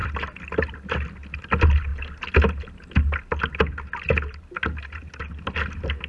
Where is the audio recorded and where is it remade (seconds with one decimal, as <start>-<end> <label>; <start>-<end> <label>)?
0.0-6.1 recorded